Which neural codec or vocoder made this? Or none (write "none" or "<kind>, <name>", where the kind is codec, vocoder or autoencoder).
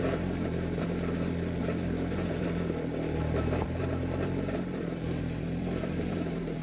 vocoder, BigVGAN v2